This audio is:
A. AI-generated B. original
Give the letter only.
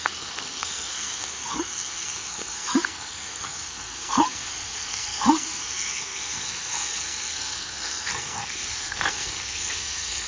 A